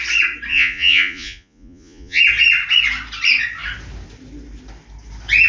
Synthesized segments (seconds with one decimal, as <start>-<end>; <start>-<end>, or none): 0.5-2.2